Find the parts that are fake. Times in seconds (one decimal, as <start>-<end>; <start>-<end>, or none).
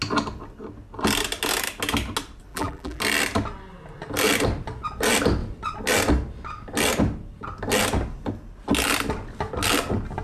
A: 2.5-3.0